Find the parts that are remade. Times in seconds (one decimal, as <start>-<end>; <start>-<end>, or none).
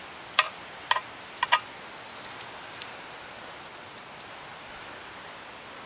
none